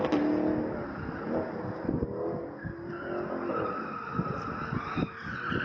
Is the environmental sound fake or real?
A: real